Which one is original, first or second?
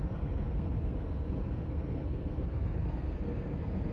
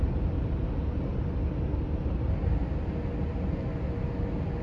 second